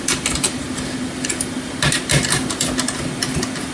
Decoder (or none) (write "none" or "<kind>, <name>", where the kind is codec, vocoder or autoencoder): none